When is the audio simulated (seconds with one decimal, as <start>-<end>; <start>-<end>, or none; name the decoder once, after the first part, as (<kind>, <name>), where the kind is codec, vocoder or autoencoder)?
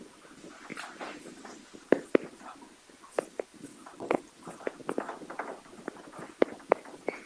3.7-4.2 (vocoder, WaveNeXt)